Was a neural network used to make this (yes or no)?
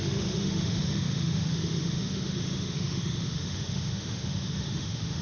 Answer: yes